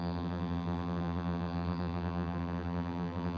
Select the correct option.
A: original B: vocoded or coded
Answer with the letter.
B